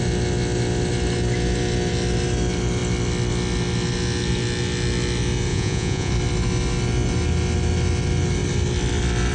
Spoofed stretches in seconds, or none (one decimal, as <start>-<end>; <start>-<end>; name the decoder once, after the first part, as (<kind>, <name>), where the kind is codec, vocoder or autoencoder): 5.5-6.1 (vocoder, Vocos)